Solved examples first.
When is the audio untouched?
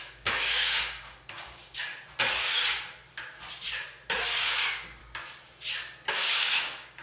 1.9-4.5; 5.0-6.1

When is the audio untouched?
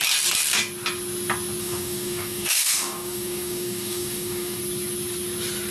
0.0-1.6; 4.6-5.7